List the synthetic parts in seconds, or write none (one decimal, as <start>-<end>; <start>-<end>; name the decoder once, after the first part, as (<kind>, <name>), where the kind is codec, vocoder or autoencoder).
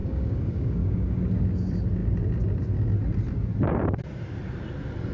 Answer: 0.0-1.2 (codec, DAC)